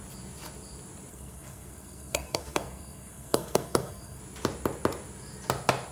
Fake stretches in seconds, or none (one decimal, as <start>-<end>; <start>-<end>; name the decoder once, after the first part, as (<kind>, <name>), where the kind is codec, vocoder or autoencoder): 1.1-4.2 (codec, SNAC)